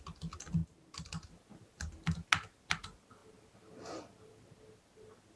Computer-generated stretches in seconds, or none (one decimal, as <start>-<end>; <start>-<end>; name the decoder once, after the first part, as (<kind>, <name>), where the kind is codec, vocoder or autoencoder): none